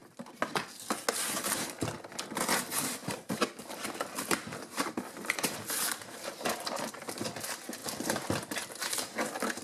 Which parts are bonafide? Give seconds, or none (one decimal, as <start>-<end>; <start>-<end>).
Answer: 0.0-3.0; 6.9-7.8; 9.0-9.6